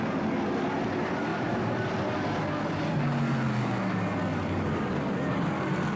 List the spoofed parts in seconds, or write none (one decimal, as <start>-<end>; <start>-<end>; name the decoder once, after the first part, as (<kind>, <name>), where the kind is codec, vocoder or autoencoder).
1.3-1.9 (vocoder, BigVGAN v2); 4.3-5.0